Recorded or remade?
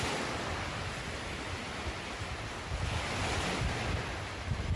recorded